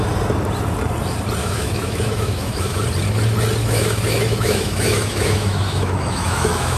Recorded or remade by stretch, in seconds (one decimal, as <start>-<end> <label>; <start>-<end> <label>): 0.0-1.4 recorded; 1.4-2.8 remade; 2.8-3.6 recorded; 3.6-6.8 remade